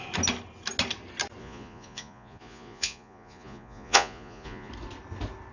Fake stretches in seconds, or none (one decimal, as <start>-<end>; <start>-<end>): 1.4-4.7